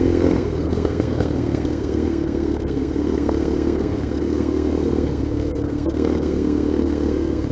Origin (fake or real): fake